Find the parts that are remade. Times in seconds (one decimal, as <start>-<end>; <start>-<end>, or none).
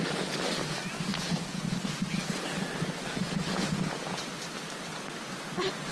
1.1-1.7; 3.2-4.0